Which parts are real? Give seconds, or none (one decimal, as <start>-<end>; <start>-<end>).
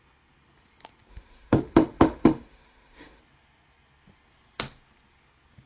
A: 0.0-1.1; 3.2-5.7